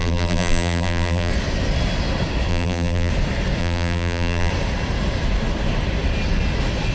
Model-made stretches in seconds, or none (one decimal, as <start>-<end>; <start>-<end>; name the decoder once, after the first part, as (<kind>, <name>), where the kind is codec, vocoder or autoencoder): 0.0-1.3 (vocoder, BigVGAN v2); 2.5-3.1; 3.6-4.5